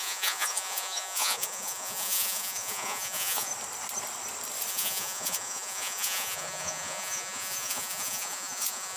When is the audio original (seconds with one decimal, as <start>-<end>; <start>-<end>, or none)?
3.5-4.7